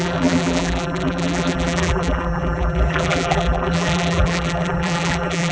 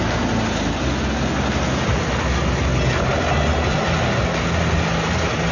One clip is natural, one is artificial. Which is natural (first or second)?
second